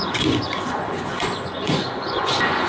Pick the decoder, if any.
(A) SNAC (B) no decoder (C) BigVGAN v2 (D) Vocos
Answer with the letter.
D